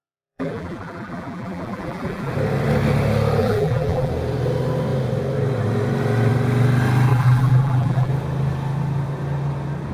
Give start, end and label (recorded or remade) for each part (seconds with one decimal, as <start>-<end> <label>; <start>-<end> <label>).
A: 0.0-2.3 remade; 2.3-3.4 recorded; 3.4-4.1 remade; 4.1-7.1 recorded; 7.1-8.1 remade; 8.1-9.9 recorded